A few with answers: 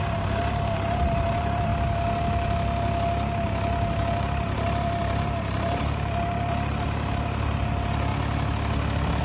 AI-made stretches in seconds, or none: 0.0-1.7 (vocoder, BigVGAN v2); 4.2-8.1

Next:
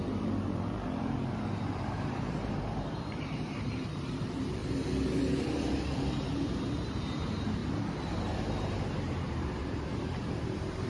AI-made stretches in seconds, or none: 0.0-7.6 (vocoder, BigVGAN v2); 9.3-10.9

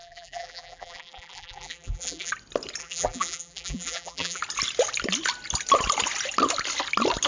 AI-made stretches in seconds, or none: 0.0-2.3 (vocoder, BigVGAN v2); 2.8-4.4

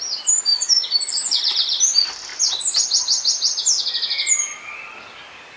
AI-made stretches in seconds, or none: 0.0-2.3 (vocoder, BigVGAN v2)